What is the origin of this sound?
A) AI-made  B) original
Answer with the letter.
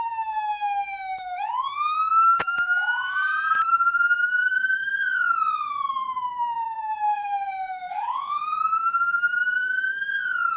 A